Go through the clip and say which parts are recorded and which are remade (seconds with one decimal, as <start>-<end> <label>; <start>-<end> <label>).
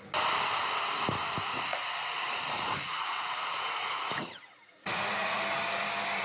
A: 0.0-1.7 recorded; 1.7-5.4 remade; 5.4-6.2 recorded